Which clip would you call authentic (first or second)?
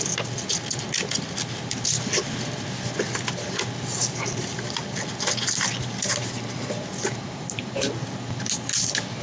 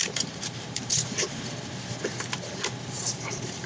first